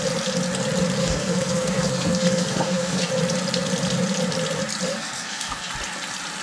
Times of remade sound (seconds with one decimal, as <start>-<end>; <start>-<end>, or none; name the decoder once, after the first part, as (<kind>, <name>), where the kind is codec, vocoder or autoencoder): 1.0-3.1 (codec, SNAC); 4.9-5.7